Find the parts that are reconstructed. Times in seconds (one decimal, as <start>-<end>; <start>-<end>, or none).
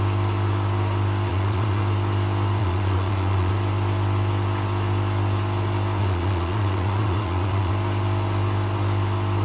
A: 1.3-1.8; 2.6-3.5; 6.0-7.7